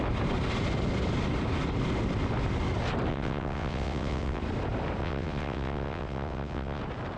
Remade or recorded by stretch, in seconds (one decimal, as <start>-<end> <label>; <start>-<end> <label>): 0.0-3.1 recorded; 3.1-4.4 remade; 4.4-5.0 recorded; 5.0-6.8 remade; 6.8-7.2 recorded